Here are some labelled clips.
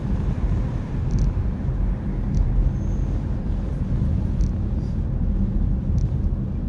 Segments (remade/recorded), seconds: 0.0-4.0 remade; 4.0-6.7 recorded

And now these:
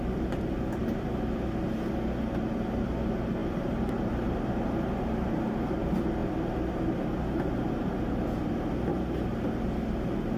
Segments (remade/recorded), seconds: 0.0-3.4 recorded; 3.4-4.5 remade; 4.5-10.4 recorded

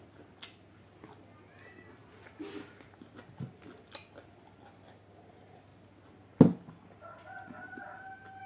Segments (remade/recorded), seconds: 0.0-8.5 recorded

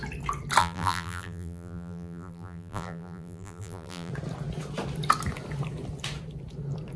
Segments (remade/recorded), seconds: 0.0-0.6 recorded; 0.6-4.1 remade; 4.1-7.0 recorded

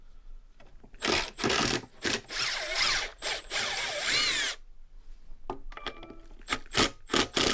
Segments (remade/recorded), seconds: 0.0-0.7 recorded; 0.7-2.2 remade; 2.2-3.1 recorded; 3.1-4.1 remade; 4.1-7.5 recorded